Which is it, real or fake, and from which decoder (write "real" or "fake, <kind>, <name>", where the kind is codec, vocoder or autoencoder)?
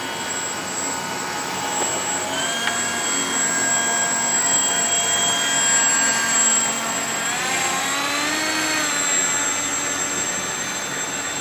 real